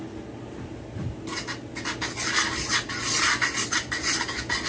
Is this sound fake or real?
real